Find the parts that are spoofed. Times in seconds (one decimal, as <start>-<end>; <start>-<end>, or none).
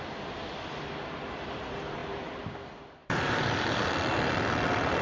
2.0-2.5; 3.0-3.9